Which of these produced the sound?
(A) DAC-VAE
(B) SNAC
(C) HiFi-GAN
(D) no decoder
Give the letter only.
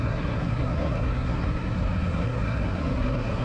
B